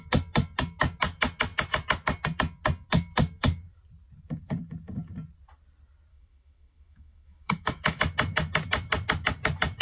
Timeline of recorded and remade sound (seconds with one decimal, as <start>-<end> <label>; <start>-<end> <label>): 0.0-6.1 recorded; 6.1-8.0 remade; 8.0-9.8 recorded